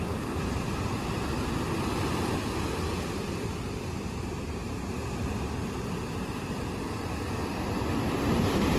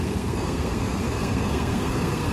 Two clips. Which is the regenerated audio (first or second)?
second